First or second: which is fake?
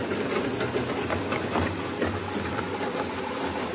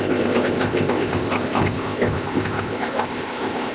second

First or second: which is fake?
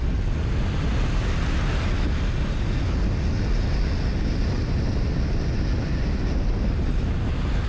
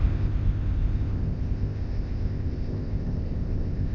second